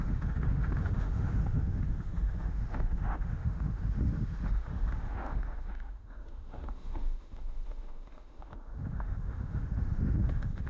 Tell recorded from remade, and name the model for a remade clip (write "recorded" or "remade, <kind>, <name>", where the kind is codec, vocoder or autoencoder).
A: remade, autoencoder, DAC-VAE